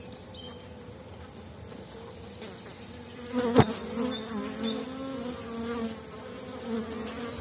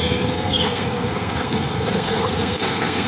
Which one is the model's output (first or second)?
second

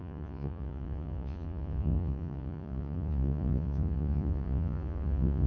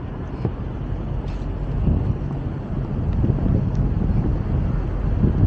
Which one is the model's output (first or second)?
first